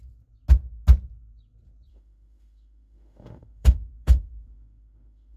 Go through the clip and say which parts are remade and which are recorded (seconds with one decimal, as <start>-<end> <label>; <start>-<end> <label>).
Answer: 0.0-1.9 recorded; 1.9-5.4 remade